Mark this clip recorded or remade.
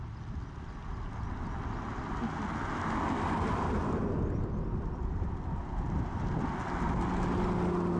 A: recorded